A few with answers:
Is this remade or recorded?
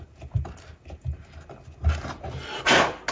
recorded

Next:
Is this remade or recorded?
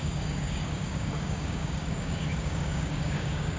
remade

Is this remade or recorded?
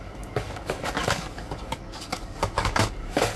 remade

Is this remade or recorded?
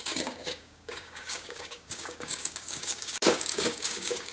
remade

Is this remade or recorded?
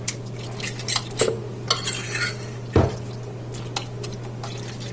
recorded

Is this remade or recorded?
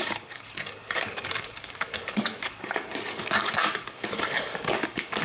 remade